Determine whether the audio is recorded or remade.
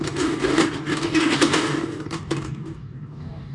remade